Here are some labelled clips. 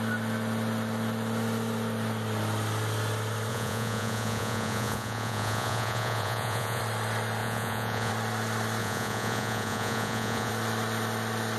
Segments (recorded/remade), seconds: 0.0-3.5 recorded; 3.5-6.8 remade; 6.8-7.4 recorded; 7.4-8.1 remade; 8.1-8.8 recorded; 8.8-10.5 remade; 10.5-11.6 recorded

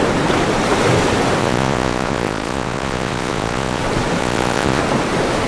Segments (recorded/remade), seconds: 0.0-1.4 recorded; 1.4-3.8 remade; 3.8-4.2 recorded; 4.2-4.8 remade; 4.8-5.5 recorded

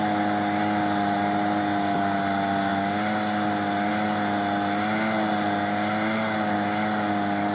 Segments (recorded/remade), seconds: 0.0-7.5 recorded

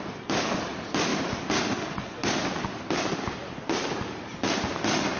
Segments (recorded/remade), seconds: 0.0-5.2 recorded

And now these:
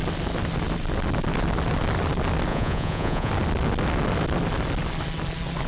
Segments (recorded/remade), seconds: 0.0-2.5 recorded; 2.5-3.3 remade; 3.3-5.7 recorded